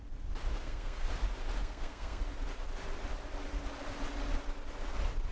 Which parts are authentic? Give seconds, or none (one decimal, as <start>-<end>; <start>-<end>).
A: 0.0-0.5; 1.1-1.6; 2.2-5.3